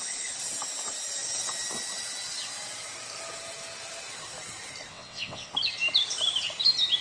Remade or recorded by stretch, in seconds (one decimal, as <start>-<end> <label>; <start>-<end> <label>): 0.0-4.9 recorded; 4.9-5.5 remade; 5.5-7.0 recorded